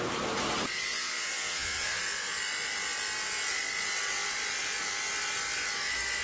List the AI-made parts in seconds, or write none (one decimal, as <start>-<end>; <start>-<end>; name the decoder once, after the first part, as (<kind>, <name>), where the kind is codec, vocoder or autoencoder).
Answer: 0.9-2.0 (vocoder, Vocos)